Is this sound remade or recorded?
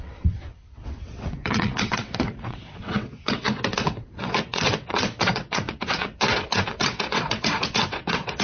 remade